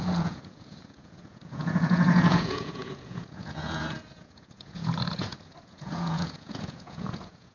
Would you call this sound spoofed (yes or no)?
yes